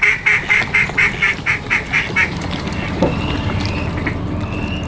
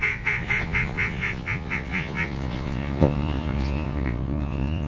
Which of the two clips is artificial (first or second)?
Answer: second